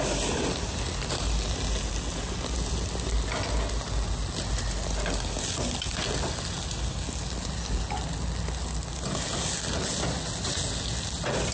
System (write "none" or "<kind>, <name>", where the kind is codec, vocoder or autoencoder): none